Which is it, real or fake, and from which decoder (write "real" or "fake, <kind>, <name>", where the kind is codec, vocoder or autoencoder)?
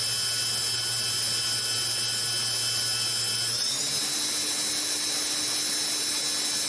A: real